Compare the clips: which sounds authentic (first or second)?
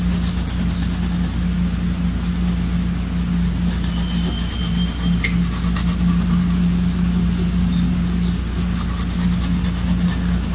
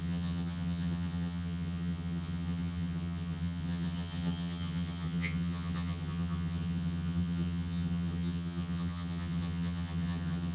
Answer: first